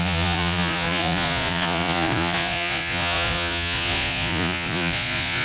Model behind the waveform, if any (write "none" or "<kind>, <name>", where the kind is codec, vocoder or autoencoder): vocoder, Vocos